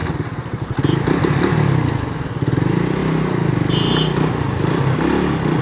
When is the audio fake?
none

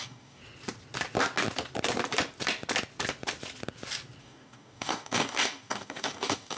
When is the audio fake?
0.0-0.4 (codec, DAC); 4.2-6.6